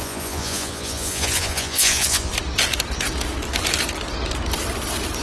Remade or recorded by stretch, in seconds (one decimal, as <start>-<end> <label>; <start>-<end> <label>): 0.0-2.3 remade; 2.3-5.2 recorded

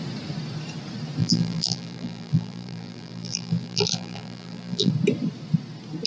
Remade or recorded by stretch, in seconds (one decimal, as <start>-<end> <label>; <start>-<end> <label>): 0.0-1.2 recorded; 1.2-4.9 remade; 4.9-6.1 recorded